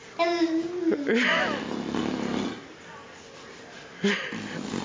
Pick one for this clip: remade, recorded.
recorded